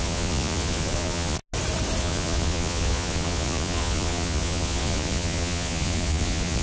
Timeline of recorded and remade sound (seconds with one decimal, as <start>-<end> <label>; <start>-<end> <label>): 0.0-1.4 remade; 1.4-2.0 recorded; 2.0-6.6 remade